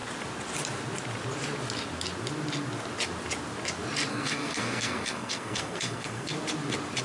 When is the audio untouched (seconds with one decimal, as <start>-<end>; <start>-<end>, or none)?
0.0-4.1; 6.3-7.0